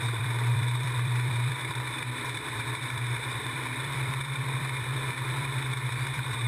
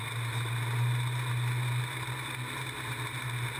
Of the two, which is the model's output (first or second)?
first